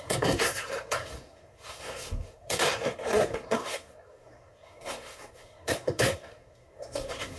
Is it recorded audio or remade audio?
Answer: remade